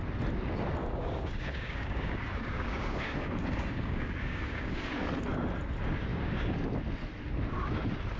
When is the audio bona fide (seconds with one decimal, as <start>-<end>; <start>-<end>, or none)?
0.0-0.8; 4.9-6.1; 6.6-8.2